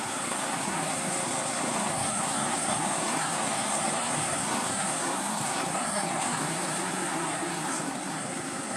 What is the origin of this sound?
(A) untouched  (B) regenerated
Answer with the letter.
B